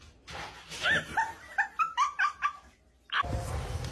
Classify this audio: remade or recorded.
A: recorded